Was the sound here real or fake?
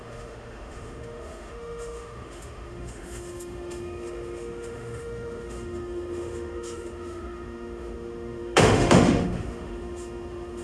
fake